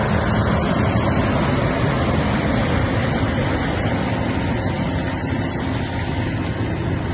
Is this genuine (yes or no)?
yes